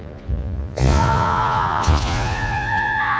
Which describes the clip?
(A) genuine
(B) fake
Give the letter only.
B